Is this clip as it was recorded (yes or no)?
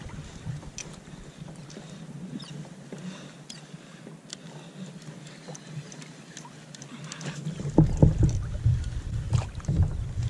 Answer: yes